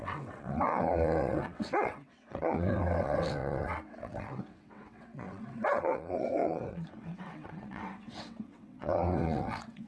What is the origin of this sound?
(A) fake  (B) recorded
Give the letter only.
A